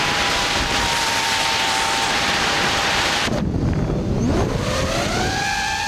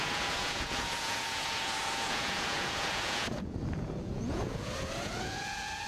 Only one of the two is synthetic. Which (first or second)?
second